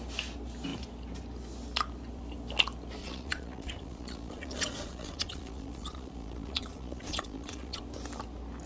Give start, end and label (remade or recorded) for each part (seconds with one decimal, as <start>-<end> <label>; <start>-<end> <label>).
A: 0.0-3.0 recorded; 3.0-7.8 remade; 7.8-8.7 recorded

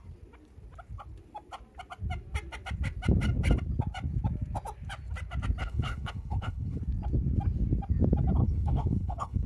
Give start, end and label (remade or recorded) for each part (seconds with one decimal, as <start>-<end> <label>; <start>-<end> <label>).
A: 0.0-5.6 recorded; 5.6-6.8 remade; 6.8-8.4 recorded; 8.4-9.5 remade

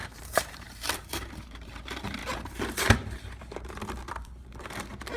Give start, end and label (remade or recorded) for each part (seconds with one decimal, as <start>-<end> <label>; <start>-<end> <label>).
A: 0.0-5.2 remade